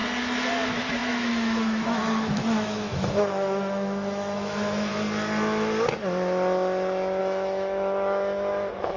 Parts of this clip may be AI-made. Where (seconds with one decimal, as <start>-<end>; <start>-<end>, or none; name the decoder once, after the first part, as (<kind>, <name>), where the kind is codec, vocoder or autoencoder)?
0.5-4.9 (autoencoder, DAC-VAE); 7.2-9.0